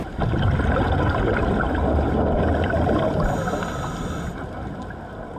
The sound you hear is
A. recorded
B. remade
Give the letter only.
A